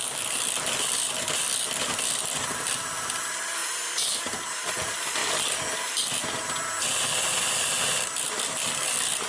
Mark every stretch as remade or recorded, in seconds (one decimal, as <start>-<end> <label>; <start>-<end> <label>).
0.0-5.2 remade; 5.2-6.4 recorded; 6.4-9.3 remade